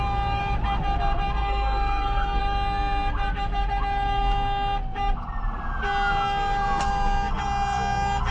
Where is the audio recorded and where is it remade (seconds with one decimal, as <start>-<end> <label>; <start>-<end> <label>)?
0.0-1.4 recorded; 1.4-2.4 remade; 2.4-8.3 recorded